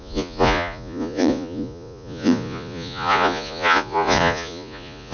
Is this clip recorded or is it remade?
remade